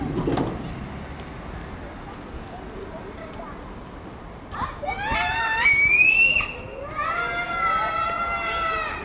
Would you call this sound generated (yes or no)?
no